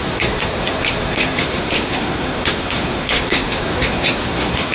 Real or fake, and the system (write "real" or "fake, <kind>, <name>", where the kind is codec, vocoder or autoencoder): fake, codec, SNAC